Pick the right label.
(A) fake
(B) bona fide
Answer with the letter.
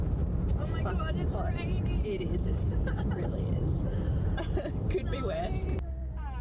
A